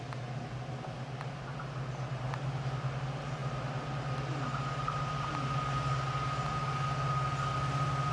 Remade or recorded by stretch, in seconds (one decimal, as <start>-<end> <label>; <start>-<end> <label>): 0.0-8.1 recorded